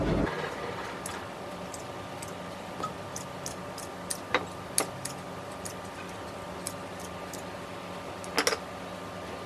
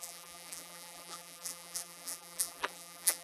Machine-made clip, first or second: second